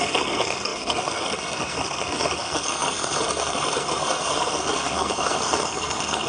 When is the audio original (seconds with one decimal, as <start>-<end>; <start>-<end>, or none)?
none